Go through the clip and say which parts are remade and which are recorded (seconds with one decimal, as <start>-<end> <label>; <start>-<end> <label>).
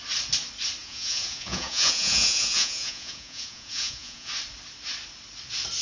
0.0-0.8 recorded; 0.8-4.3 remade; 4.3-5.8 recorded